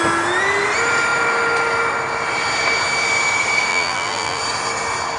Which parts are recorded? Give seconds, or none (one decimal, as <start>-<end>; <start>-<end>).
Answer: 0.0-3.7; 4.4-5.2